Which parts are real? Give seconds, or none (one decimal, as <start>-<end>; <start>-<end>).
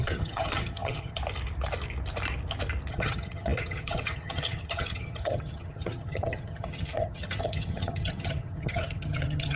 1.2-2.9